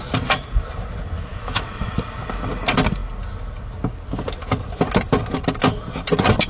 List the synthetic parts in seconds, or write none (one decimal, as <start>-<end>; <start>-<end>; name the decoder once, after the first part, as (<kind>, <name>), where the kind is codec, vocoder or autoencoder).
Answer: 1.3-1.9 (autoencoder, DAC-VAE)